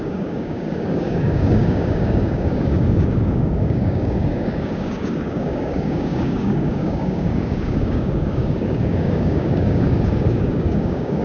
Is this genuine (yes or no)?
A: no